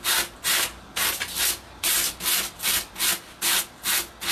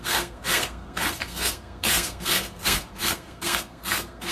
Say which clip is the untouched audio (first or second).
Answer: first